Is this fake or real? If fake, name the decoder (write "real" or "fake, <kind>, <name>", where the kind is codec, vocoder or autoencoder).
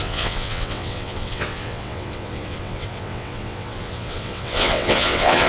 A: fake, vocoder, WaveNeXt